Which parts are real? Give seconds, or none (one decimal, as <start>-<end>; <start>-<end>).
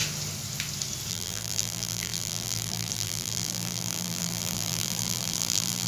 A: 0.0-1.1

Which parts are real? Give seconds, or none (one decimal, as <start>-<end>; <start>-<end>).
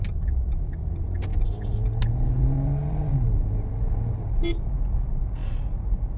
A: 0.0-6.2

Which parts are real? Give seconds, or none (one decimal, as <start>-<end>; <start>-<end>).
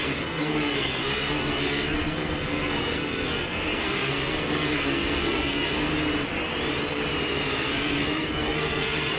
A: 5.9-7.3